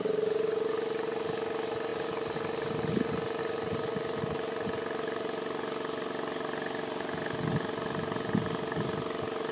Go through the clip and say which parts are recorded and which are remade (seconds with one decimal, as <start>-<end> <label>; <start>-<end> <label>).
0.0-9.5 recorded

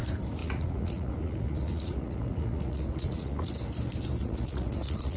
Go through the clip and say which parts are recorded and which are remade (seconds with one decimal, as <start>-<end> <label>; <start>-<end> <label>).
0.0-0.4 recorded; 0.4-3.5 remade; 3.5-4.2 recorded; 4.2-5.2 remade

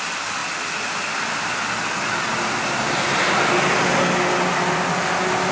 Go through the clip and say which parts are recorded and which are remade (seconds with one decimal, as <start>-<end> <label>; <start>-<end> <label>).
0.0-5.5 recorded

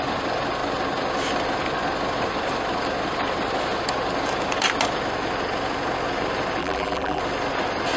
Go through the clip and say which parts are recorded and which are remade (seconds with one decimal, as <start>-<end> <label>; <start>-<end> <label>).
0.0-6.6 recorded; 6.6-7.2 remade; 7.2-8.0 recorded

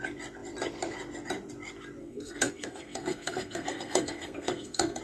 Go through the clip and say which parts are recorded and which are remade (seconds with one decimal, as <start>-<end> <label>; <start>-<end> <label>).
0.0-2.0 recorded; 2.0-5.0 remade

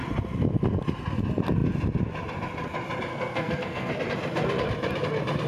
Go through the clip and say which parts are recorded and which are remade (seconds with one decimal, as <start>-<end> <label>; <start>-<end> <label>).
0.0-3.1 recorded; 3.1-3.9 remade; 3.9-5.5 recorded

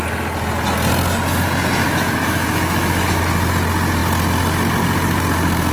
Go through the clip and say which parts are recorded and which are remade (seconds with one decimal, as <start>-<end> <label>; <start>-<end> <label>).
0.0-1.8 recorded; 1.8-3.2 remade; 3.2-5.7 recorded

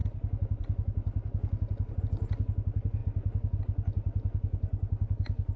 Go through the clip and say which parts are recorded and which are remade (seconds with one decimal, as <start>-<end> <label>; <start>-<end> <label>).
0.0-5.6 recorded